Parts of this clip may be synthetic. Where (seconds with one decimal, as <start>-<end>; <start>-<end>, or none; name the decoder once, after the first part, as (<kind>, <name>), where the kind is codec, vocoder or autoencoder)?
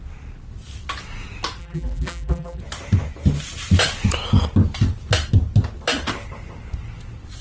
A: 1.6-2.6 (vocoder, BigVGAN v2)